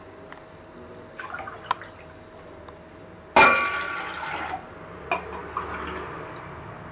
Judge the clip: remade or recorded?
recorded